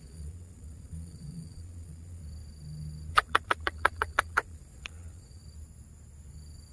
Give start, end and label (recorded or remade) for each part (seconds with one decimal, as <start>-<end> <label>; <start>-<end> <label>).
0.0-2.2 remade; 2.2-3.1 recorded; 3.1-5.4 remade; 5.4-6.7 recorded